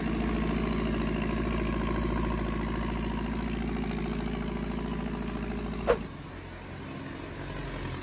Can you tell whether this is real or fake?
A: real